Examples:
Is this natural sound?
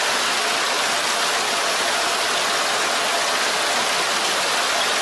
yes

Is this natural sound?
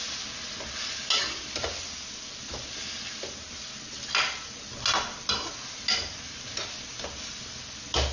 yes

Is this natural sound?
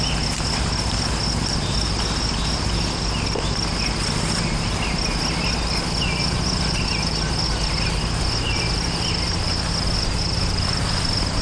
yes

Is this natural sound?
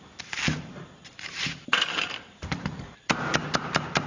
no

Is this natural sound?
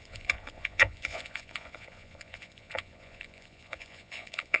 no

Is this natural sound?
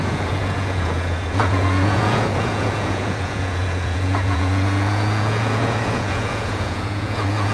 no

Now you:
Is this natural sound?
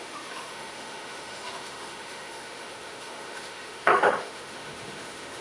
no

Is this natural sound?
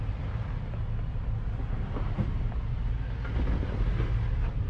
yes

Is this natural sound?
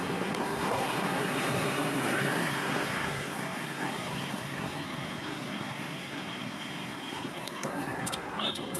no